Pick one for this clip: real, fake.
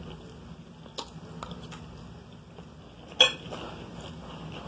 real